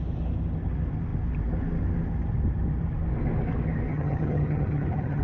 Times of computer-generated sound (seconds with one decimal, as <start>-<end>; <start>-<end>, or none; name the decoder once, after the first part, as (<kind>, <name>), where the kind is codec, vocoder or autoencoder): 3.9-5.2 (vocoder, HiFi-GAN)